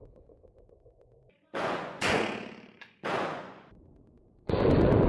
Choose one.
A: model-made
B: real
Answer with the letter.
A